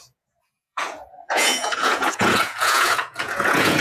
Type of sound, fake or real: fake